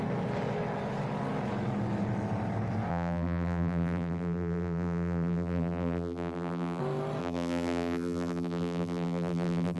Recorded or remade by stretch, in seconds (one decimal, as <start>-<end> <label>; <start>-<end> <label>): 0.0-2.9 recorded; 2.9-6.8 remade; 6.8-7.2 recorded; 7.2-9.8 remade